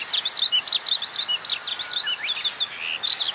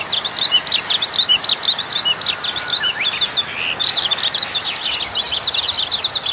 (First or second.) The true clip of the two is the first